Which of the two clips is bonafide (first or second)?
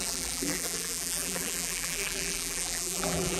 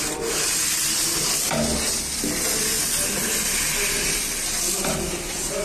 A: second